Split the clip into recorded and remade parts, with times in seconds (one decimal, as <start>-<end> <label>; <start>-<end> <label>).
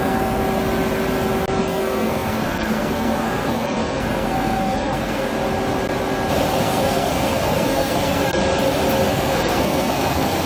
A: 0.0-0.4 remade; 0.4-1.6 recorded; 1.6-5.3 remade; 5.3-6.6 recorded; 6.6-8.4 remade; 8.4-9.1 recorded; 9.1-10.5 remade